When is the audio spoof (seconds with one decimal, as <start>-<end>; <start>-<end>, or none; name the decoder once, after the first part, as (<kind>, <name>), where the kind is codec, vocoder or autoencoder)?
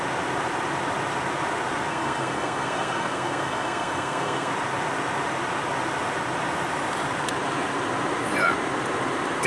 1.9-4.5 (codec, SNAC)